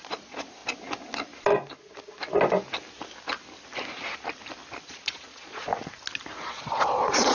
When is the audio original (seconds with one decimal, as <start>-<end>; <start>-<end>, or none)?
0.6-4.8; 5.7-6.4